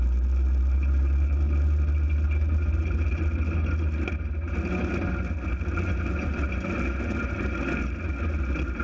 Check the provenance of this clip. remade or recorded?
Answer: recorded